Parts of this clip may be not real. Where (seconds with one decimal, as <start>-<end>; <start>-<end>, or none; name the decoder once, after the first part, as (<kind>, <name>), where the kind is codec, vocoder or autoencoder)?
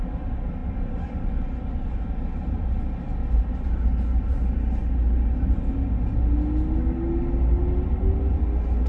none